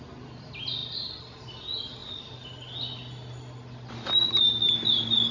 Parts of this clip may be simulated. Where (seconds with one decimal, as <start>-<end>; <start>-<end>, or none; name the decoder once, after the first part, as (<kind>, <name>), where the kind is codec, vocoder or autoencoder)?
none